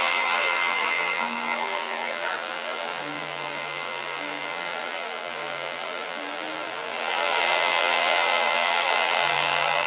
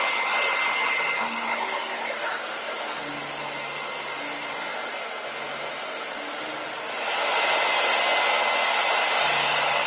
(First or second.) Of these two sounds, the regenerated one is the first